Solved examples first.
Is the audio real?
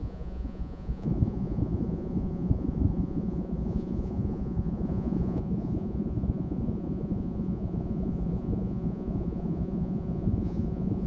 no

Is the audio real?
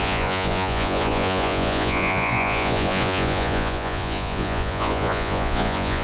no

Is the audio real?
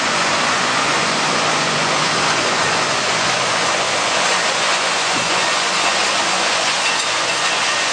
no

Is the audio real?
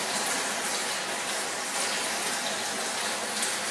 yes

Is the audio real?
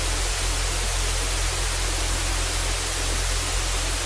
yes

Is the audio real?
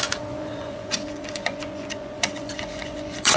no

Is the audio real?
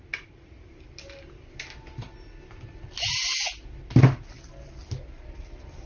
yes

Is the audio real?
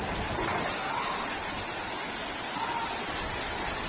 yes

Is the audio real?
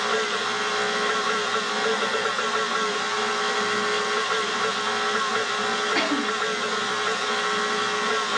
yes